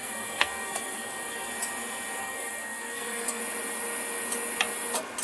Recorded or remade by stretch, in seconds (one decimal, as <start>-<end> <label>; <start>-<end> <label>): 0.0-1.5 remade; 1.5-2.2 recorded; 2.2-3.4 remade; 3.4-5.2 recorded